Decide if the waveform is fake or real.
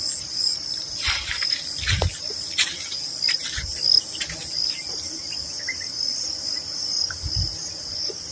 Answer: real